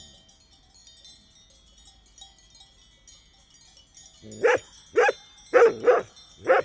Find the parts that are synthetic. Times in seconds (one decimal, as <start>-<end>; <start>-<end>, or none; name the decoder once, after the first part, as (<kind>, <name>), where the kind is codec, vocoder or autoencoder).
none